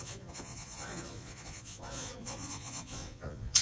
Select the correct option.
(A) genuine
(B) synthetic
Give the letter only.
B